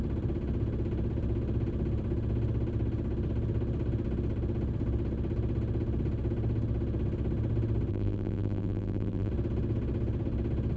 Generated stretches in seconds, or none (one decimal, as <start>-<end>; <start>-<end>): 7.9-9.3